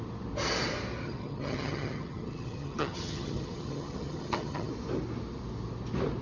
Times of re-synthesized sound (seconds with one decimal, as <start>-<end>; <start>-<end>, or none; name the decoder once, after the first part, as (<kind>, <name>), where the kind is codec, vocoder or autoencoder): 1.0-4.7 (vocoder, HiFi-GAN)